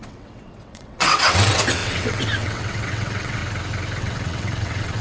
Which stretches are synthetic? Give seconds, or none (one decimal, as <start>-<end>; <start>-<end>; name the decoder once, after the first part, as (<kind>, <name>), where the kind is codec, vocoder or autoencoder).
0.0-3.4 (vocoder, WaveNeXt); 4.0-5.0